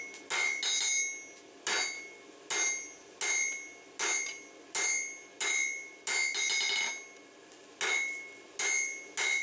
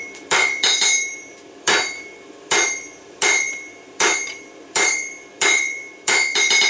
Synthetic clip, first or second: second